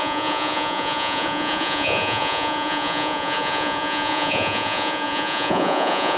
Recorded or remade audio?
remade